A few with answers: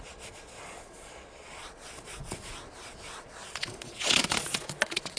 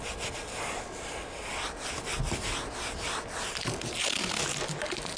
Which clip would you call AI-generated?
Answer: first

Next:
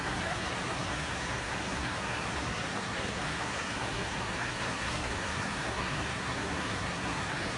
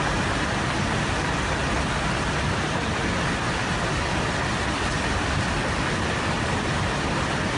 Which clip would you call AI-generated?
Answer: first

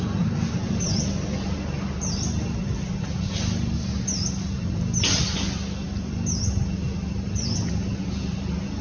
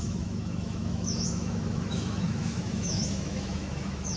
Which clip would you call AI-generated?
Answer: second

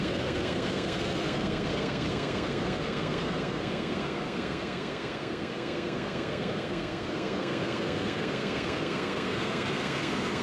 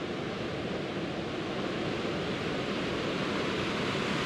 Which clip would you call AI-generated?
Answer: first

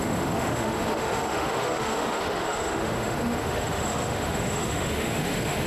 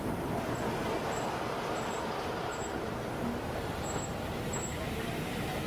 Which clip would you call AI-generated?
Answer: first